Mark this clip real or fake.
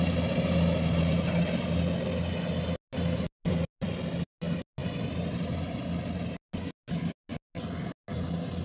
real